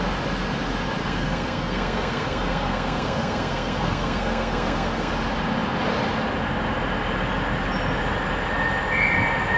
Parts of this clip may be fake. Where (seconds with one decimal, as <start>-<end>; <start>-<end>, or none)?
1.0-5.1